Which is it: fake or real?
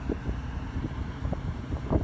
fake